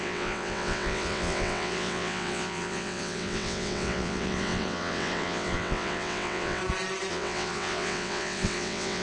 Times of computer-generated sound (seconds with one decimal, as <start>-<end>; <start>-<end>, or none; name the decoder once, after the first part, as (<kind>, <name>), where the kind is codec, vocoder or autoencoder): 0.0-6.6 (vocoder, WaveNeXt); 7.1-9.0